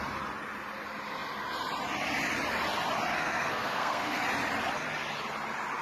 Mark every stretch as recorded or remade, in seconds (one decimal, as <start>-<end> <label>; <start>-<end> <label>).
0.0-3.1 recorded; 3.1-4.2 remade; 4.2-5.8 recorded